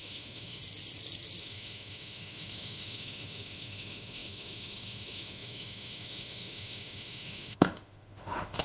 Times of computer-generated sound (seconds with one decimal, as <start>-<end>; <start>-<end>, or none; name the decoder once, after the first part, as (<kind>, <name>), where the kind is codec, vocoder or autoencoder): 0.0-0.6 (autoencoder, DAC-VAE); 1.4-8.6